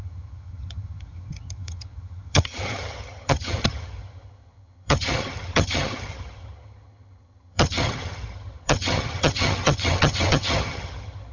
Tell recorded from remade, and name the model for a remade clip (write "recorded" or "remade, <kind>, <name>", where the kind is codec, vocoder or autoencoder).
remade, vocoder, HiFi-GAN